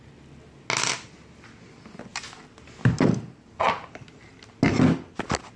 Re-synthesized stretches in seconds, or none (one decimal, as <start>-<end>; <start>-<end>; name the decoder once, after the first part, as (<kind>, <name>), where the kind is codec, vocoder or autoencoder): none